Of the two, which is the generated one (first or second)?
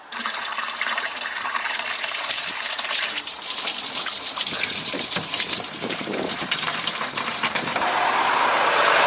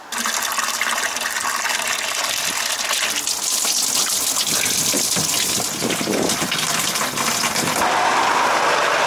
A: first